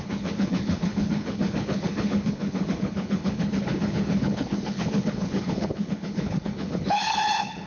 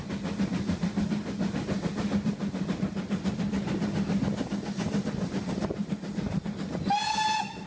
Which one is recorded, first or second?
second